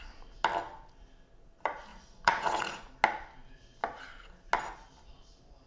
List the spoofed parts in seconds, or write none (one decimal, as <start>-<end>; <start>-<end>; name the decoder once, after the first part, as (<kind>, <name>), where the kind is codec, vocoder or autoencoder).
1.9-2.9 (vocoder, Vocos)